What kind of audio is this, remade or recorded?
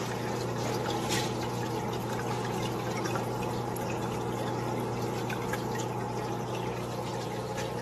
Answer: recorded